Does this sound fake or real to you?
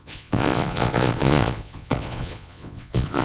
fake